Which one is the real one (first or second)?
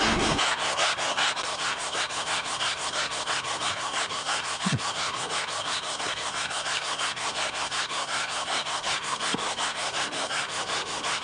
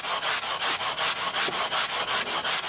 second